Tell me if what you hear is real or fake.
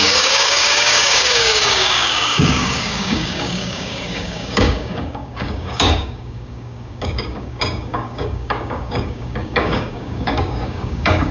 fake